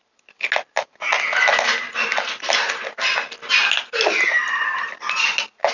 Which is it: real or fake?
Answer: real